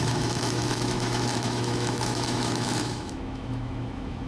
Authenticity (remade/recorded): remade